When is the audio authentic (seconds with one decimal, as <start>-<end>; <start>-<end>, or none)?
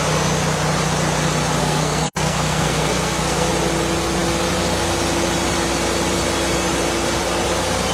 0.0-1.6; 3.5-7.9